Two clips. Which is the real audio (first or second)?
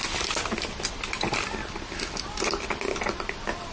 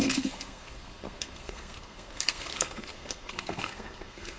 first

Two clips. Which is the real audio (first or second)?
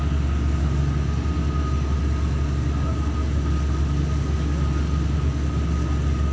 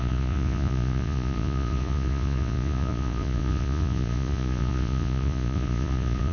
first